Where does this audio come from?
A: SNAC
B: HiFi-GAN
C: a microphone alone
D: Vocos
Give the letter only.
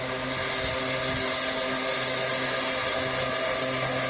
C